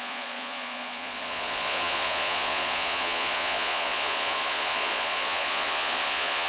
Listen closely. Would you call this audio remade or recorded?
remade